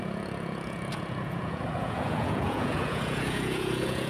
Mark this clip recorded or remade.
remade